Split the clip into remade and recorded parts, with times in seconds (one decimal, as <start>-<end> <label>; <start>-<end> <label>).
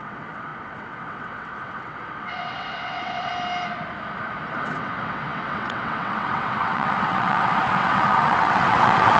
0.0-3.3 remade; 3.3-4.5 recorded; 4.5-9.2 remade